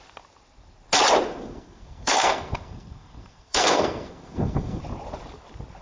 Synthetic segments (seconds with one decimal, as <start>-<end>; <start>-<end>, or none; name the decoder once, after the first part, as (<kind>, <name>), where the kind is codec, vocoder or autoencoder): 1.3-4.8 (codec, SNAC)